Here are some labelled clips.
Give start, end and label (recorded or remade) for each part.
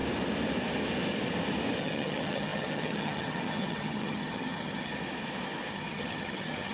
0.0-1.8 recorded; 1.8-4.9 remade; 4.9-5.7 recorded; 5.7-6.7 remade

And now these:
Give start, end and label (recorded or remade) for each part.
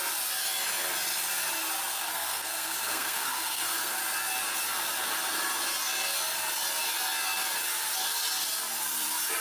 0.0-1.9 recorded; 1.9-4.0 remade; 4.0-9.4 recorded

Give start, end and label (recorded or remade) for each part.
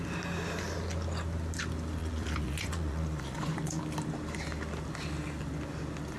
0.0-2.0 recorded; 2.0-3.8 remade; 3.8-6.2 recorded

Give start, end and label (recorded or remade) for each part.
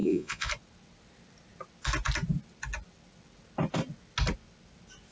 0.0-0.5 remade; 0.5-5.1 recorded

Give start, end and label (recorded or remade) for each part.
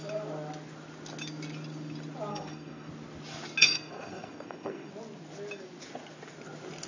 0.0-2.3 recorded; 2.3-2.9 remade; 2.9-3.6 recorded; 3.6-4.9 remade; 4.9-6.9 recorded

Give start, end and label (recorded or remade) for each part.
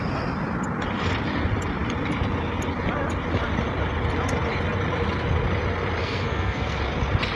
0.0-6.0 recorded; 6.0-6.8 remade; 6.8-7.4 recorded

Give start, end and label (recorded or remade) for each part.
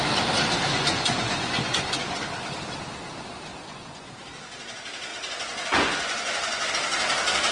0.0-0.7 recorded; 0.7-2.2 remade; 2.2-3.5 recorded; 3.5-4.1 remade; 4.1-5.1 recorded; 5.1-6.7 remade; 6.7-7.5 recorded